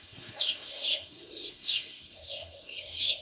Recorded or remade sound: remade